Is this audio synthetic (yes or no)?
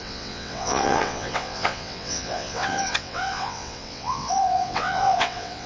yes